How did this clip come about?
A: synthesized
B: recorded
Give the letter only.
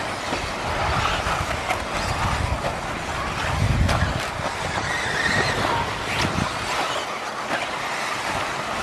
B